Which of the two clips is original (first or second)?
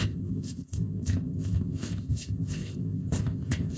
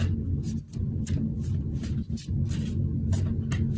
second